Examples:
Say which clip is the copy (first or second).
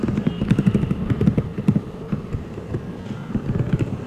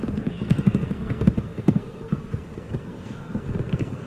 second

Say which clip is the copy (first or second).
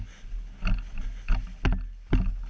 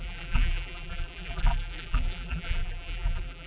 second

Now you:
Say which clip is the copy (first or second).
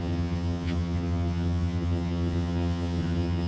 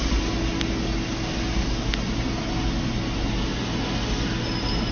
first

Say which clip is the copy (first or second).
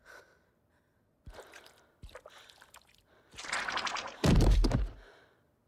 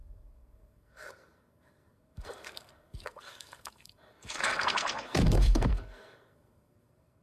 second